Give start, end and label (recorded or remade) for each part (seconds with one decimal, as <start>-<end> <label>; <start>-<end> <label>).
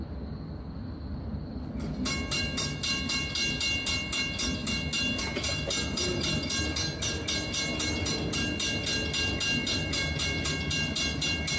0.0-11.6 recorded